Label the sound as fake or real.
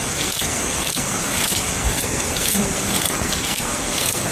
fake